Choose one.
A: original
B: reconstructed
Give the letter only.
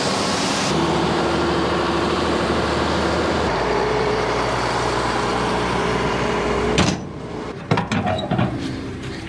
B